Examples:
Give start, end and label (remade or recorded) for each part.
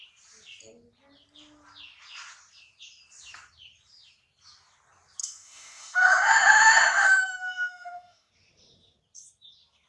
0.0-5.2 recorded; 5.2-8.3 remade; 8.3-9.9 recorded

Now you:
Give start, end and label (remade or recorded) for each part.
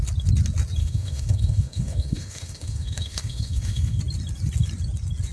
0.0-0.8 recorded; 0.8-4.0 remade; 4.0-5.3 recorded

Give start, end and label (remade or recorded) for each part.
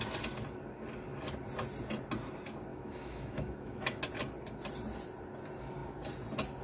0.0-2.7 recorded; 2.7-4.0 remade; 4.0-6.6 recorded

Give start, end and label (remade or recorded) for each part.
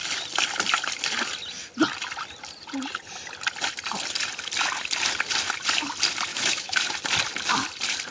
0.0-6.3 recorded; 6.3-6.8 remade; 6.8-8.1 recorded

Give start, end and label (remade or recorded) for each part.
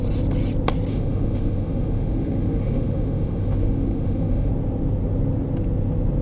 0.0-0.9 recorded; 0.9-4.5 remade; 4.5-6.2 recorded